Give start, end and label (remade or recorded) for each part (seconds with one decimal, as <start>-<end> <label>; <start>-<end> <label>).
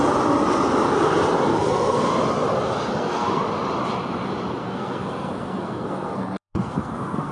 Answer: 0.0-1.5 recorded; 1.5-2.1 remade; 2.1-2.9 recorded; 2.9-3.4 remade; 3.4-4.6 recorded; 4.6-7.3 remade